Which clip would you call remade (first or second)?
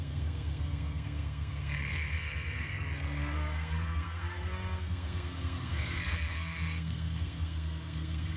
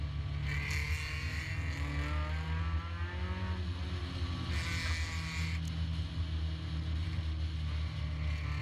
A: first